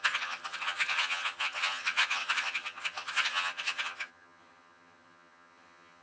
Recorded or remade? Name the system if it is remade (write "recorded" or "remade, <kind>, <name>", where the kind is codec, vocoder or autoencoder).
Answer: remade, vocoder, HiFi-GAN